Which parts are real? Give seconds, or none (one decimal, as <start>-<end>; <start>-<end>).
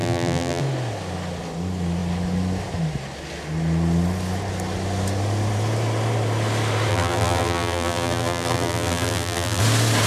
0.6-6.9; 9.6-10.1